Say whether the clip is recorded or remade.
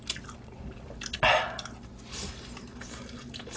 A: recorded